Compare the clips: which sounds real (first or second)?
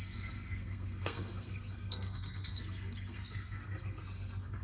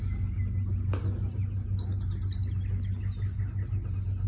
second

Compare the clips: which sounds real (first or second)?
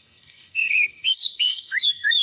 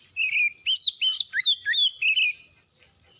second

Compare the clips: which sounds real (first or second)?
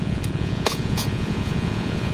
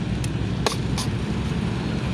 second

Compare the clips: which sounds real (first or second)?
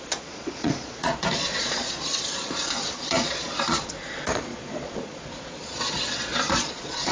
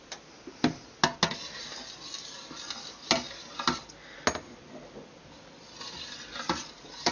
second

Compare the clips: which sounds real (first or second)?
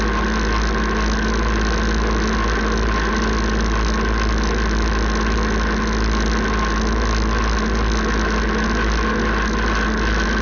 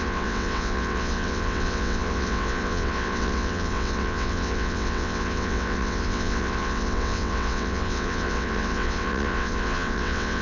first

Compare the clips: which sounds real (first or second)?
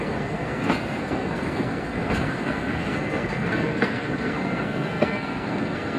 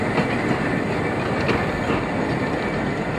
second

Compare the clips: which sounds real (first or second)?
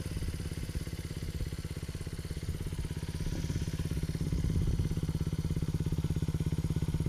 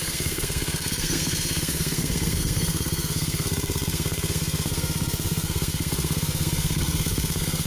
first